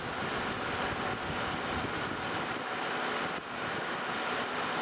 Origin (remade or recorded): recorded